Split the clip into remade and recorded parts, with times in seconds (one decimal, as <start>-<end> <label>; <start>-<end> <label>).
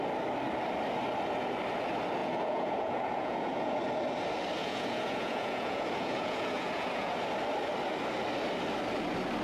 0.0-2.2 recorded; 2.2-3.8 remade; 3.8-4.6 recorded; 4.6-7.1 remade; 7.1-9.4 recorded